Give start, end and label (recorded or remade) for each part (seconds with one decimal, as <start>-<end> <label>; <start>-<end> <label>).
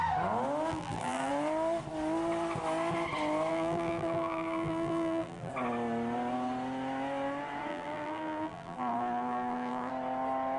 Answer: 0.0-0.7 recorded; 0.7-1.3 remade; 1.3-3.5 recorded; 3.5-5.5 remade; 5.5-7.7 recorded; 7.7-9.9 remade; 9.9-10.6 recorded